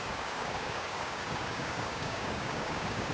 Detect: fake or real fake